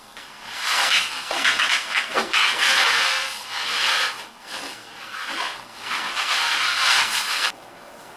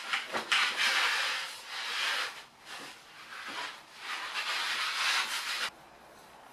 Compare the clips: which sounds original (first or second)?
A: second